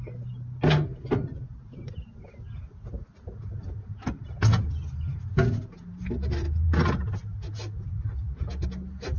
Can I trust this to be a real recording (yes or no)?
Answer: yes